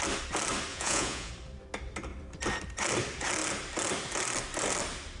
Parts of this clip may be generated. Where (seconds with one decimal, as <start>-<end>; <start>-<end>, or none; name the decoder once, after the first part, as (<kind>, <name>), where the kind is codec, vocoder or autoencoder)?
0.7-1.3 (vocoder, Vocos)